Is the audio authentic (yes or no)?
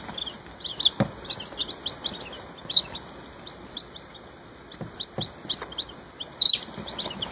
yes